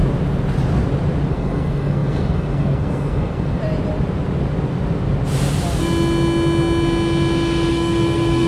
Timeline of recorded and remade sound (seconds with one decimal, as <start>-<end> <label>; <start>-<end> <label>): 0.0-1.3 recorded; 1.3-3.6 remade; 3.6-7.7 recorded; 7.7-8.5 remade